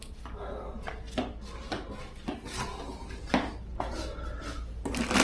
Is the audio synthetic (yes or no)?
no